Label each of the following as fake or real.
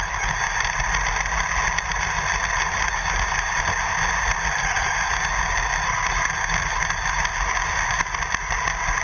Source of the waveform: real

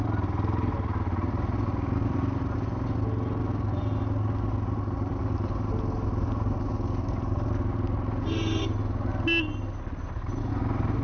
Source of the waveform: real